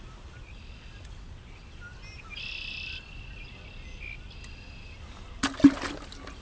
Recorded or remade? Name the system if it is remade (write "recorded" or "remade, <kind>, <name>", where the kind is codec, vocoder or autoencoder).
recorded